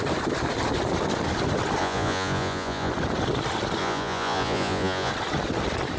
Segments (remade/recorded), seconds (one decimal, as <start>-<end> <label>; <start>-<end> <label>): 0.0-1.8 recorded; 1.8-2.9 remade; 2.9-3.8 recorded; 3.8-5.1 remade; 5.1-6.0 recorded

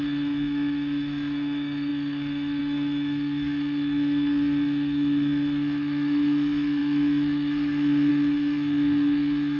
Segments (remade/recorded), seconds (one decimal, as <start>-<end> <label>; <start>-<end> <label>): 0.0-9.6 remade

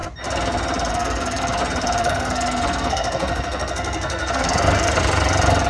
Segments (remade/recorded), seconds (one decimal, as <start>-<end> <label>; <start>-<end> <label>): 0.0-0.9 recorded; 0.9-1.6 remade; 1.6-2.0 recorded; 2.0-5.0 remade; 5.0-5.7 recorded

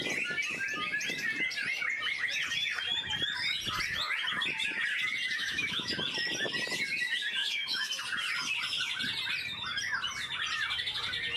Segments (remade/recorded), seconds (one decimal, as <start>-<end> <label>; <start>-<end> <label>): 0.0-5.4 recorded; 5.4-5.9 remade; 5.9-7.4 recorded; 7.4-8.0 remade; 8.0-11.4 recorded

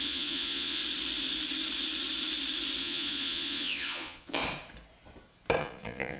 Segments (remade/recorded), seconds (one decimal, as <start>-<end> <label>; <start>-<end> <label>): 0.0-0.8 remade; 0.8-2.8 recorded; 2.8-4.4 remade; 4.4-5.6 recorded; 5.6-6.2 remade